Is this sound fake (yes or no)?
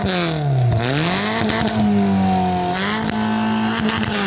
no